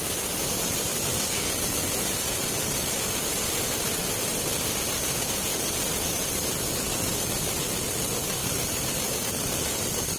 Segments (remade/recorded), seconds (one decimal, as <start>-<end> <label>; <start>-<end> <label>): 0.0-10.2 recorded